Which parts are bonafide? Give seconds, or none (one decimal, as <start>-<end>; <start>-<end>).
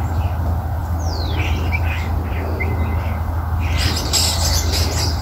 0.0-5.2